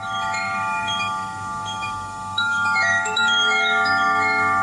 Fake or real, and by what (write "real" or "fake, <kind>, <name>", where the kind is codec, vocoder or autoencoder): fake, autoencoder, DAC-VAE